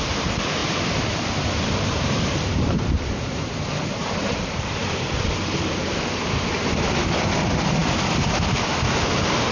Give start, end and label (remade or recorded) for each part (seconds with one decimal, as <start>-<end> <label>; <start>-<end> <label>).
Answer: 0.0-0.6 recorded; 0.6-5.2 remade; 5.2-9.5 recorded